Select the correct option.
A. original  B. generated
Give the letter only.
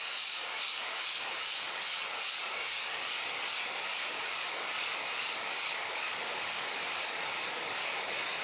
B